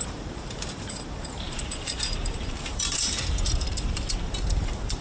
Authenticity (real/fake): fake